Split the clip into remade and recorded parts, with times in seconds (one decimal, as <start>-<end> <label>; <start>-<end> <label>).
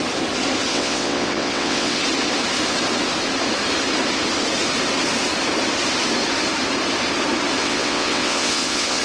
0.0-0.7 recorded; 0.7-2.0 remade; 2.0-7.6 recorded; 7.6-9.0 remade